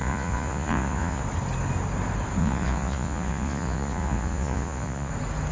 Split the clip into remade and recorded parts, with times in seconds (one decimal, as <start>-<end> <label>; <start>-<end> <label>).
0.0-1.2 remade; 1.2-2.4 recorded; 2.4-5.1 remade; 5.1-5.5 recorded